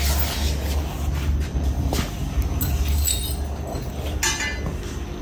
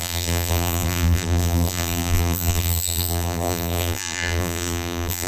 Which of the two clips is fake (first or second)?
second